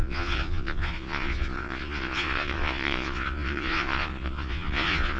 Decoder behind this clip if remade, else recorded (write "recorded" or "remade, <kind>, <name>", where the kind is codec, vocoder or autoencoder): remade, vocoder, Vocos